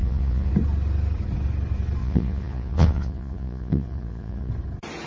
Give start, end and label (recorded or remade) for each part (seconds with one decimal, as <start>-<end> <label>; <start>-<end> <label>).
0.0-0.5 remade; 0.5-2.0 recorded; 2.0-4.5 remade; 4.5-5.1 recorded